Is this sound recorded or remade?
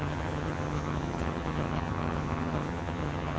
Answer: remade